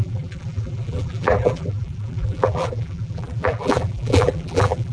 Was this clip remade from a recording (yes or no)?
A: yes